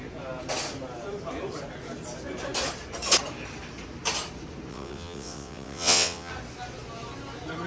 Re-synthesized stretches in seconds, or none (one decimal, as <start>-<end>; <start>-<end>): 4.7-6.3